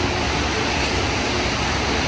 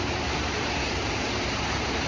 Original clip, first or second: first